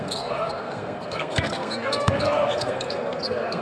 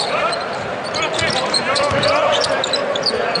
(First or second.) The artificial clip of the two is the first